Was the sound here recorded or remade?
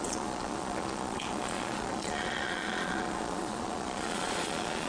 remade